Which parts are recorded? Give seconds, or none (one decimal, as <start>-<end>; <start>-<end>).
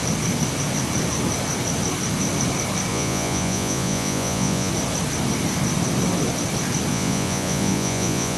0.0-2.9; 4.7-6.9